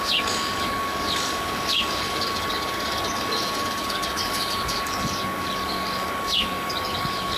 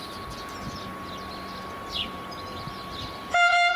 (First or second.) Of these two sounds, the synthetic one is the first